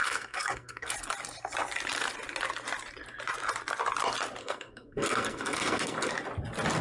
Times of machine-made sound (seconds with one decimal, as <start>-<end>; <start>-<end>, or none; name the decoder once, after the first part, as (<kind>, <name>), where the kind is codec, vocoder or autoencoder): 0.0-0.9 (codec, SNAC); 4.4-6.1